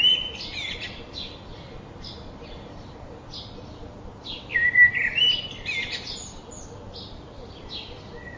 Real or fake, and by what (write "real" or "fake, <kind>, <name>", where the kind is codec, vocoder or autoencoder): real